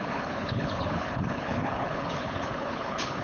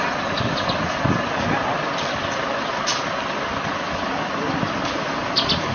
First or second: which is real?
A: second